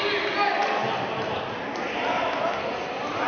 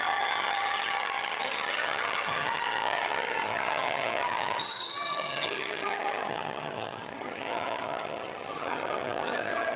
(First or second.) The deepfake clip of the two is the second